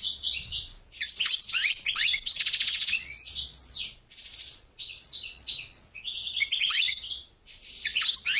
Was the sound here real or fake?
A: fake